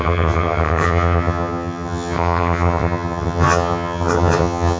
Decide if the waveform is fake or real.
fake